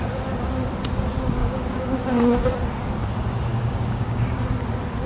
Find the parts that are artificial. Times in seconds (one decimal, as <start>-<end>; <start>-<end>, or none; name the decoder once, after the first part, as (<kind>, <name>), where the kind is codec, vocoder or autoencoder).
1.4-2.5 (codec, DAC); 3.5-4.4